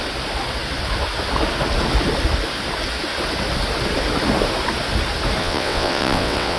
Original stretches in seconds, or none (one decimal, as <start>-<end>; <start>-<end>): 0.0-5.4